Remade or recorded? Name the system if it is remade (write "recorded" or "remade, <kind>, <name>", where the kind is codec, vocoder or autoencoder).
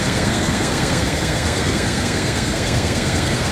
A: remade, codec, SNAC